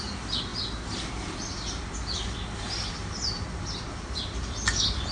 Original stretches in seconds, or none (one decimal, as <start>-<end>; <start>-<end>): 0.0-5.1